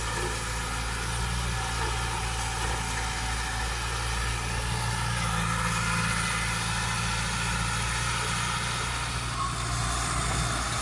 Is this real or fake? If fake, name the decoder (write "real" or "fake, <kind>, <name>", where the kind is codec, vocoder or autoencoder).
real